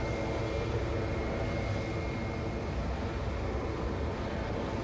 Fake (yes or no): no